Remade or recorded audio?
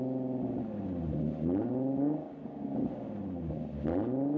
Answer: recorded